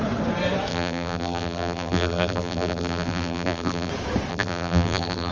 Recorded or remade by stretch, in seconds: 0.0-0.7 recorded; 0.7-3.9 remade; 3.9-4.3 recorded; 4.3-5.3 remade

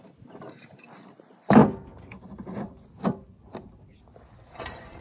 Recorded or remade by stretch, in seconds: 0.0-1.6 remade; 1.6-4.6 recorded; 4.6-5.0 remade

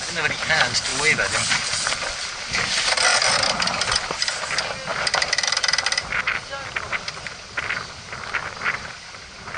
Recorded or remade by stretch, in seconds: 0.0-3.1 recorded; 3.1-4.5 remade; 4.5-9.6 recorded